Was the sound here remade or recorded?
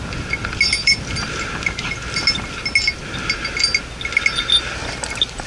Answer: recorded